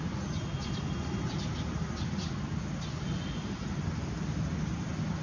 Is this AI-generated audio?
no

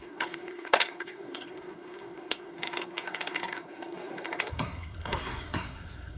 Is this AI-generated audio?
yes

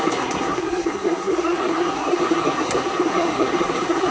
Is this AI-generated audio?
yes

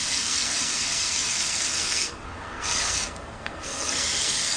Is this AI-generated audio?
yes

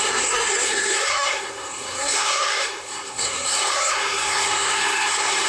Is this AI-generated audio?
yes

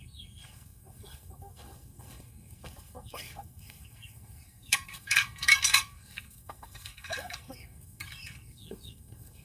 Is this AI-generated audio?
yes